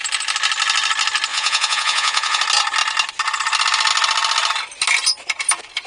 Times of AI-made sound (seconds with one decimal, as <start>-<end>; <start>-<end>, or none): 1.3-2.4